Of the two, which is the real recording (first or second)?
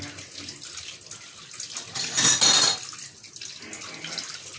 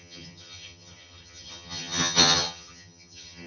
first